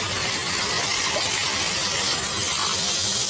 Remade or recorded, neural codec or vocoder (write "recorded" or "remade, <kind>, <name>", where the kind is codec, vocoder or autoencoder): recorded